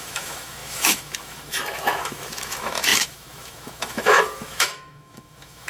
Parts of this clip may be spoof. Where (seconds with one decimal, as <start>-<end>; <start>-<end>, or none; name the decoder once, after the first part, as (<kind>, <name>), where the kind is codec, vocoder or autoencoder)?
0.0-5.7 (autoencoder, DAC-VAE)